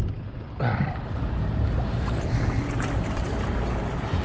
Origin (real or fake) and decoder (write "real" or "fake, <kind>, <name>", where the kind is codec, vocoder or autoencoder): real